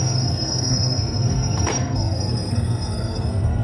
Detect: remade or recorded remade